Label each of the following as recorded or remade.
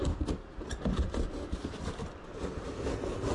recorded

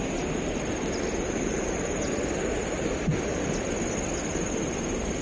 recorded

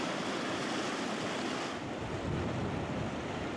recorded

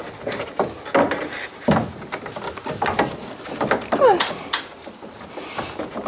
recorded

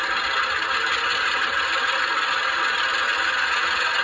recorded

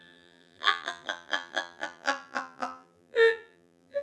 remade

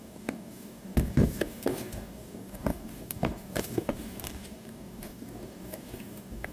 remade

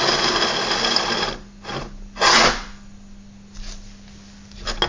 recorded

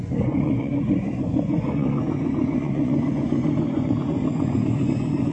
remade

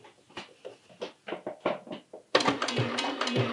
recorded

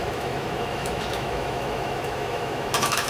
remade